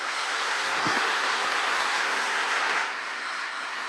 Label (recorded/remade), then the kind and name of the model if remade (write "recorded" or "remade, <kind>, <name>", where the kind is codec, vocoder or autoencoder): remade, codec, SNAC